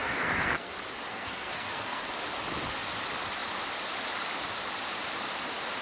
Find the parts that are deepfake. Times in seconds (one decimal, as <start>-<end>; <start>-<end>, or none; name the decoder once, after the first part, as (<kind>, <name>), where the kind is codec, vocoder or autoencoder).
0.0-0.7 (codec, SNAC); 1.1-2.0